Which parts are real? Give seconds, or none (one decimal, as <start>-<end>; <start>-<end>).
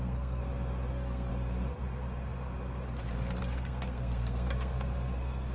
0.4-0.9; 1.3-3.4